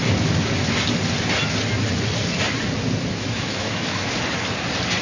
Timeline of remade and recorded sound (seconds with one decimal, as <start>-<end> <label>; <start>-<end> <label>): 0.0-3.1 recorded; 3.1-4.1 remade; 4.1-5.0 recorded